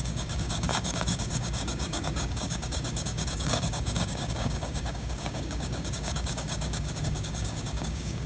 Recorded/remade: remade